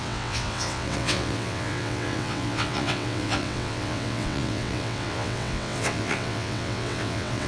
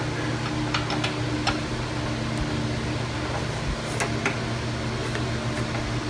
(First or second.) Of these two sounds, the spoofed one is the first